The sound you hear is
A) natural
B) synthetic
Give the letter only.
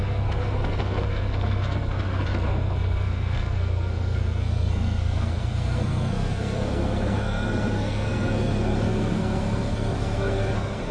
B